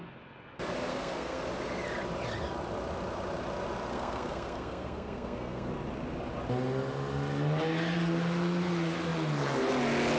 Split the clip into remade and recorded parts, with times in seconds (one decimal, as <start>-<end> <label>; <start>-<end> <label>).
0.0-0.9 recorded; 0.9-1.4 remade; 1.4-3.9 recorded; 3.9-5.7 remade; 5.7-10.2 recorded